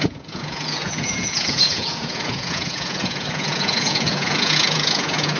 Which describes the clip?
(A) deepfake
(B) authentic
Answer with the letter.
A